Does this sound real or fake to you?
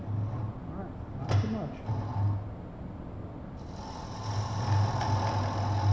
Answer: real